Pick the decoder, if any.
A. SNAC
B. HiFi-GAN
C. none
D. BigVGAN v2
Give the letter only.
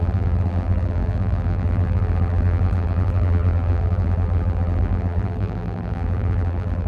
D